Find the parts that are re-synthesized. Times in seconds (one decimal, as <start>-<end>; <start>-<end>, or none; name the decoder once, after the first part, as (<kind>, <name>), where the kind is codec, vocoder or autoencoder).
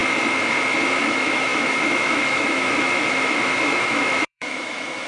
1.0-5.1 (autoencoder, DAC-VAE)